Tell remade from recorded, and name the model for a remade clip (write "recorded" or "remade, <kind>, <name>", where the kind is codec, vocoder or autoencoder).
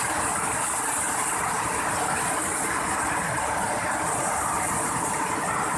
recorded